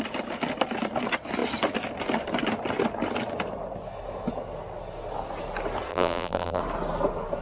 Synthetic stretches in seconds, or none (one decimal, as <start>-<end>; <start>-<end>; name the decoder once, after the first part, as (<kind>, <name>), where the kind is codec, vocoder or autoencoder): 5.9-6.6 (vocoder, BigVGAN v2)